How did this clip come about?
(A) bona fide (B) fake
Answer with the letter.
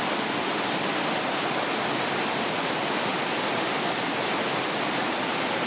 A